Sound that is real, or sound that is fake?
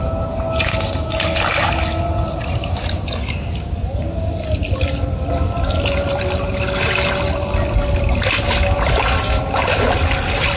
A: real